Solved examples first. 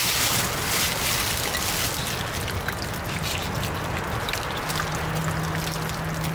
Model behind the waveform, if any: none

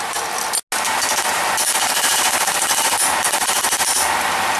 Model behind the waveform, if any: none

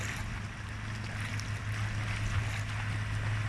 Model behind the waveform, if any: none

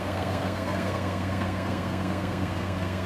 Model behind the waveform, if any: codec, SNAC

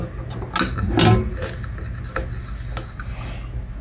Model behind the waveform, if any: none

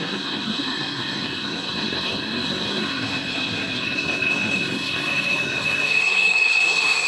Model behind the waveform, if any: codec, SNAC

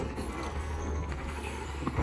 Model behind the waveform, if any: codec, SNAC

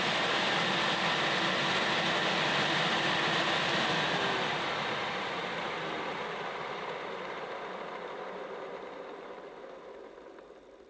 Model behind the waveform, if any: none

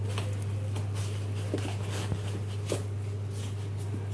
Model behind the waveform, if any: none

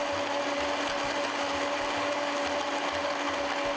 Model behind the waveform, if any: none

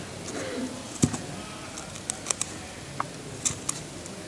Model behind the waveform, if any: none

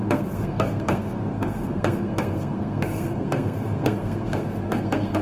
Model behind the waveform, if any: codec, SNAC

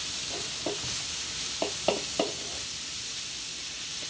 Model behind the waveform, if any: none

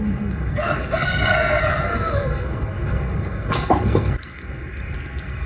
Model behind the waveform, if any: codec, SNAC